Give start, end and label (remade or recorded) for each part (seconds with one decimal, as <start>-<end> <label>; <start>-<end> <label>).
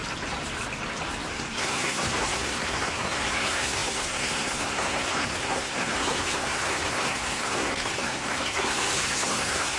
0.0-1.3 recorded; 1.3-9.8 remade